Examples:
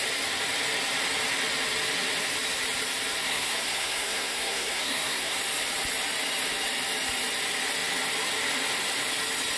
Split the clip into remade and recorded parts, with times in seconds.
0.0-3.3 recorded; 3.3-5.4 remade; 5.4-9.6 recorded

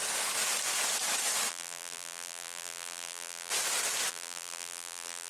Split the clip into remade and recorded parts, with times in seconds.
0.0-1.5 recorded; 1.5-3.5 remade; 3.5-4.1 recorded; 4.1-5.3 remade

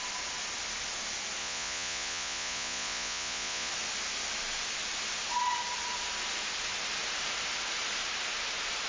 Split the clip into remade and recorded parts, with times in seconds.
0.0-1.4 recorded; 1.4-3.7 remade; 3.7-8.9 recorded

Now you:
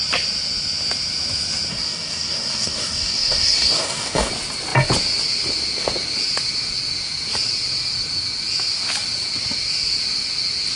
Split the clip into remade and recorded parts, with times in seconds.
0.0-1.7 recorded; 1.7-4.3 remade; 4.3-10.8 recorded